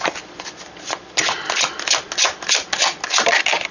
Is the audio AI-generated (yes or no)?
no